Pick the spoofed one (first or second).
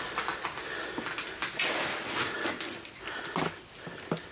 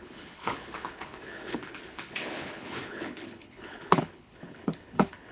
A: second